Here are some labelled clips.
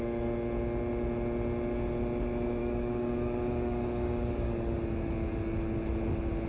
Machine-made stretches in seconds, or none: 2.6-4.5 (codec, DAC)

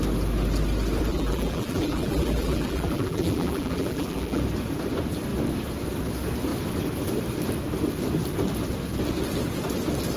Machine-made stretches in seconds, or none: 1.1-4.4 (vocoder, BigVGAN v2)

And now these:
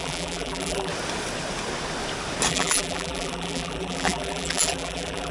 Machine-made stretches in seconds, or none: 0.0-0.9 (vocoder, BigVGAN v2); 2.5-5.3

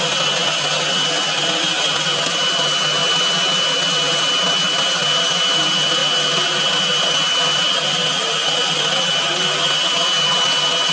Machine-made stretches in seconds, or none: none

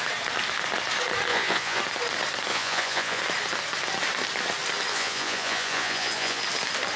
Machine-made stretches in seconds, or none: 1.3-1.8 (vocoder, Vocos); 2.5-3.2; 4.9-6.4